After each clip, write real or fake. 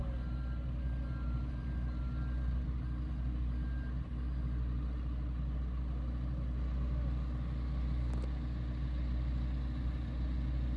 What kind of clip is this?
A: real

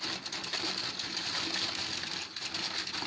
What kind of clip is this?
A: real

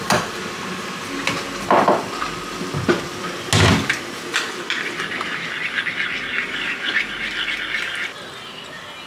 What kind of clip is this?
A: real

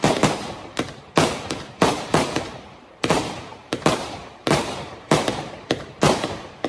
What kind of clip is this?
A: fake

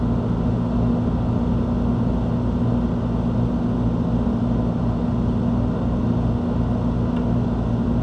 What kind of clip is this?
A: real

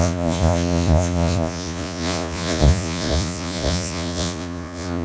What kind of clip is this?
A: fake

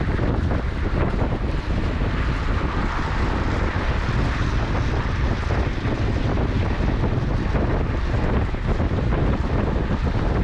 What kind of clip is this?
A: real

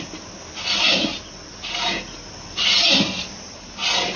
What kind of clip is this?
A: real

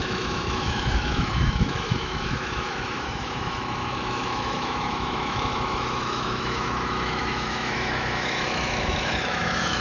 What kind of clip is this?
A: fake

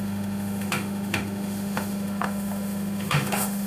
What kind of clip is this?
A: fake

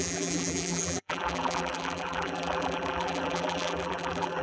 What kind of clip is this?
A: fake